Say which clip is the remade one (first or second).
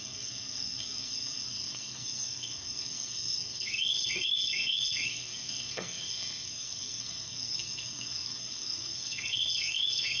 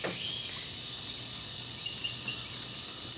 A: first